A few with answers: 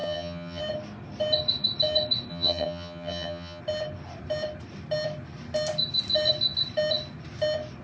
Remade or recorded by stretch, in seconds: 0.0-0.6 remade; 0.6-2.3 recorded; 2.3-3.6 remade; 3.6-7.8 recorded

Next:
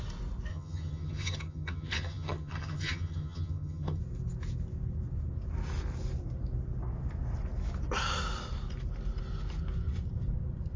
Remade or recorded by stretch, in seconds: 0.0-0.5 recorded; 0.5-4.0 remade; 4.0-10.8 recorded

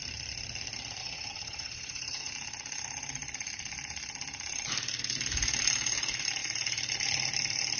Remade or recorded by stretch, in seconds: 0.0-1.0 recorded; 1.0-2.3 remade; 2.3-7.8 recorded

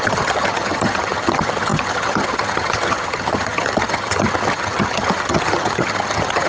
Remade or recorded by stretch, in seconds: 0.0-6.5 remade

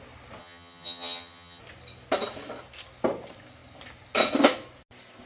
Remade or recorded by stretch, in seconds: 0.0-0.4 recorded; 0.4-1.6 remade; 1.6-5.3 recorded

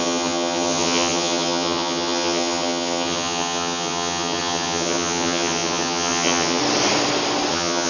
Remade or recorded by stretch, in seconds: 0.0-6.6 remade; 6.6-7.5 recorded; 7.5-7.9 remade